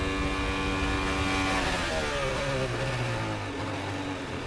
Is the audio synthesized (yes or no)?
no